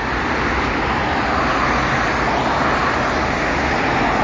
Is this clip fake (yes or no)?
no